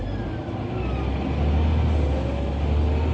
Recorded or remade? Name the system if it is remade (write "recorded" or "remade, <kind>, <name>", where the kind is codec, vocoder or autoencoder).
recorded